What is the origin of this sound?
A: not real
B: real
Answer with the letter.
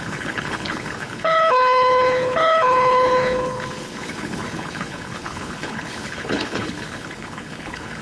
A